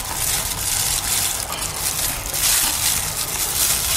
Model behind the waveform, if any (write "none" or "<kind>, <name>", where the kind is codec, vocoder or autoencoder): none